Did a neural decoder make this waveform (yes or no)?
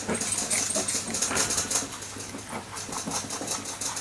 no